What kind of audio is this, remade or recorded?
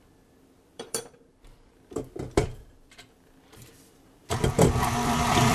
remade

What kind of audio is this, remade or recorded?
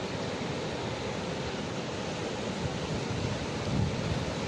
recorded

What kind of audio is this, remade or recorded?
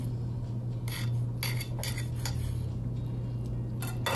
recorded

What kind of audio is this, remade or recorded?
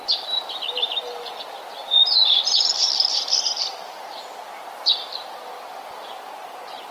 remade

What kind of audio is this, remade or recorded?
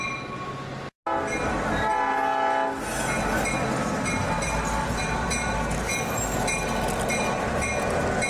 recorded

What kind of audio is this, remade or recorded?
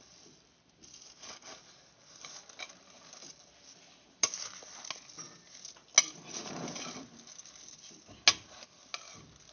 recorded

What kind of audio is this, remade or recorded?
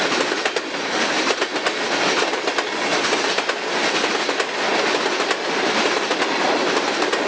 recorded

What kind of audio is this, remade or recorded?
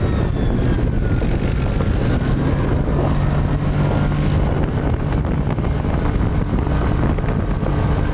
recorded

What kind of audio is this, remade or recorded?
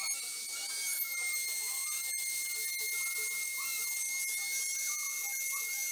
recorded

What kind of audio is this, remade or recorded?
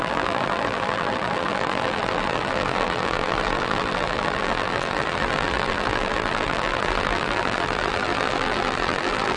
remade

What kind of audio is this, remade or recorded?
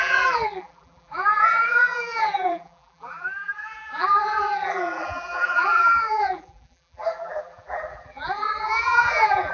remade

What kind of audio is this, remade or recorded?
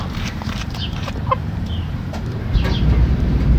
remade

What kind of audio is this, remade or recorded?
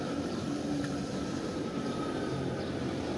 remade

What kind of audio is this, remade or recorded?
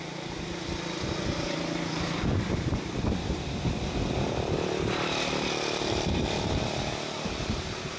remade